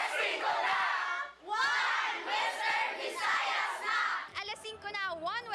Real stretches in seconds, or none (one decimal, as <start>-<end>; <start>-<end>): 0.0-4.3; 4.9-5.5